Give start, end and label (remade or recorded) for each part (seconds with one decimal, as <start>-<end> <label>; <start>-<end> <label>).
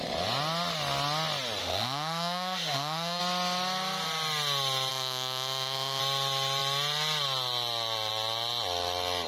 0.0-1.6 recorded; 1.6-3.2 remade; 3.2-4.9 recorded; 4.9-6.0 remade; 6.0-9.3 recorded